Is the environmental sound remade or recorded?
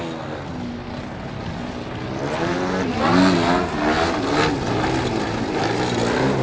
recorded